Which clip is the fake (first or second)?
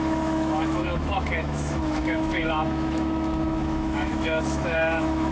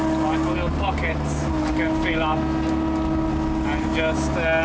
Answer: first